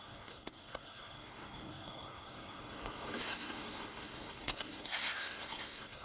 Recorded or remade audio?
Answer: remade